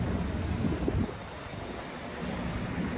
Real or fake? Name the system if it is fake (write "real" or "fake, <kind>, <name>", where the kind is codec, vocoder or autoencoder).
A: real